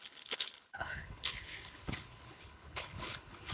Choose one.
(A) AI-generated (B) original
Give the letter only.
A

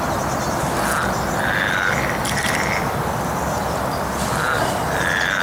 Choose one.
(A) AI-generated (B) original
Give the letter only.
B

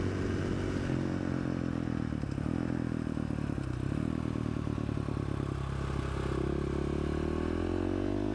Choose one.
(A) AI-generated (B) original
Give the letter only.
B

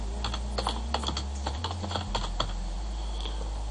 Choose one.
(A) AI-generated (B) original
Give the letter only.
B